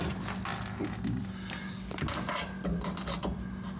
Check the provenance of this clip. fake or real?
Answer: real